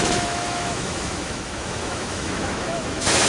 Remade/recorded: remade